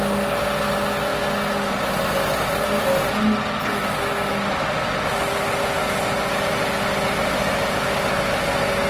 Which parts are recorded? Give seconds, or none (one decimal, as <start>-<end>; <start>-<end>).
0.0-8.9